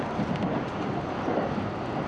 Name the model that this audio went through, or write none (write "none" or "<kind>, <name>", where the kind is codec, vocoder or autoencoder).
none